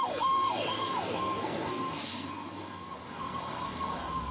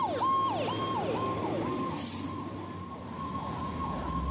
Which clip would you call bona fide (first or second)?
second